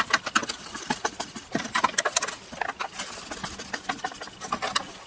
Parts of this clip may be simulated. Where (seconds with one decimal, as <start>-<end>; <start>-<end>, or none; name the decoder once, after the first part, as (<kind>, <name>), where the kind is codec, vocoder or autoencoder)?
none